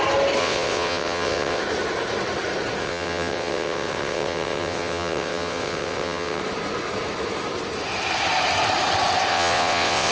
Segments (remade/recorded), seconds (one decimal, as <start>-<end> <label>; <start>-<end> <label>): 0.0-0.4 recorded; 0.4-1.6 remade; 1.6-2.8 recorded; 2.8-6.4 remade; 6.4-9.3 recorded; 9.3-10.1 remade